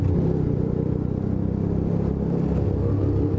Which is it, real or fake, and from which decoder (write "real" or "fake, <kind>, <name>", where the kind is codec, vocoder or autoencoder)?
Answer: real